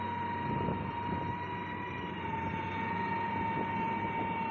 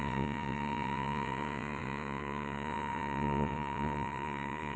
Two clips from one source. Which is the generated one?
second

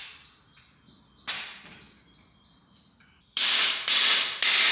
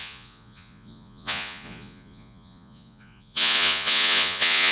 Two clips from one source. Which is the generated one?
second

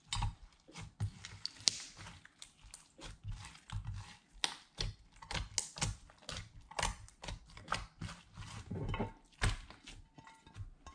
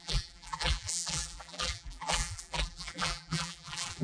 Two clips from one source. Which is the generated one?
second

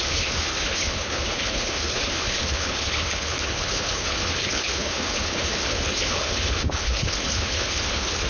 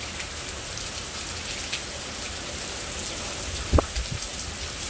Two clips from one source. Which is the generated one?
first